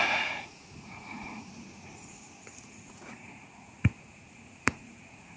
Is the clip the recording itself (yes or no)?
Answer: no